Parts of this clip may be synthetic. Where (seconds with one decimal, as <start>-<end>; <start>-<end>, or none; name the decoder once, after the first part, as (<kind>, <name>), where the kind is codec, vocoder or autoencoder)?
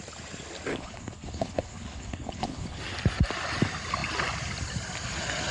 0.7-2.8 (codec, HILCodec)